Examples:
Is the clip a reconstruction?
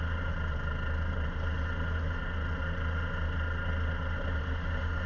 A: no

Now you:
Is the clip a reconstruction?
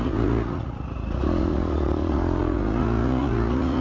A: yes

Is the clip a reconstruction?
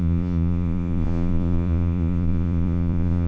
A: yes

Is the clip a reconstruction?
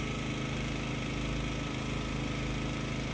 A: no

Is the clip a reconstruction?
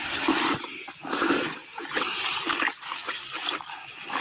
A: no